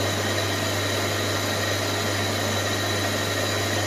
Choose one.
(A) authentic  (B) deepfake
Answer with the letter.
A